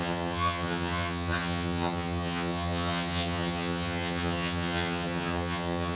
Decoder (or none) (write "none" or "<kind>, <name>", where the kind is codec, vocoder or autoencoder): vocoder, HiFi-GAN